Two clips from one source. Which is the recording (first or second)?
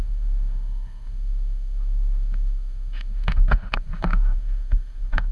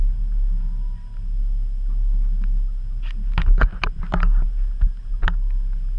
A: second